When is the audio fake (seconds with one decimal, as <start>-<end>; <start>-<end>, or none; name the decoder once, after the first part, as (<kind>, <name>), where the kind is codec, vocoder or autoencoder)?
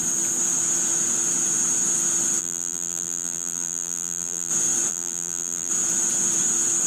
2.4-4.5 (vocoder, BigVGAN v2); 4.9-5.7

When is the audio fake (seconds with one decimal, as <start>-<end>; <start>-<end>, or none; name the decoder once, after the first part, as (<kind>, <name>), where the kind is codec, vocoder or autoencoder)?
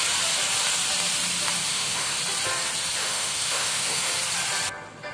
1.7-2.2 (autoencoder, DAC-VAE); 3.0-4.1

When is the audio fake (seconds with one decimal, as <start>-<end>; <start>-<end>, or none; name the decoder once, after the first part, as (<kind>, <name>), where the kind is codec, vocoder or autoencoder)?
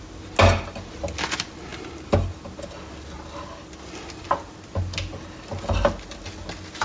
1.7-2.3 (vocoder, BigVGAN v2)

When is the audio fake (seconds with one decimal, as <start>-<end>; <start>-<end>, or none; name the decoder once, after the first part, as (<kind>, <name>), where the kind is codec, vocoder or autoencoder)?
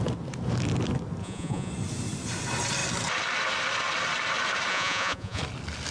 1.2-1.7 (vocoder, Vocos); 4.7-5.4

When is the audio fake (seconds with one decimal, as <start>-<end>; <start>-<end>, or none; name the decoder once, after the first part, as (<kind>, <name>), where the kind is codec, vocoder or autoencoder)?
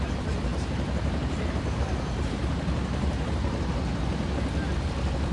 0.5-3.7 (vocoder, BigVGAN v2)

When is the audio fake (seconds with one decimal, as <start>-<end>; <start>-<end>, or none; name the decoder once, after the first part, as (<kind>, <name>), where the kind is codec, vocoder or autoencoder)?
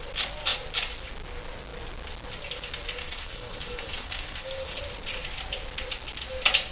3.0-4.8 (codec, SNAC)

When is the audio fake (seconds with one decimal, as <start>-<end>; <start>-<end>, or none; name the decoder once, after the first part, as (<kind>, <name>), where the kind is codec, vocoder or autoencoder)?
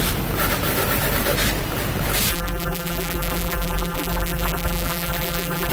2.3-5.7 (vocoder, BigVGAN v2)